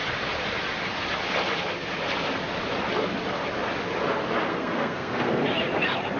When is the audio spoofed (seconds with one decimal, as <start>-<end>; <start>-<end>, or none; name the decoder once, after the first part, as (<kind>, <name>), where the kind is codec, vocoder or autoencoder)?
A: 4.5-5.4 (codec, SNAC)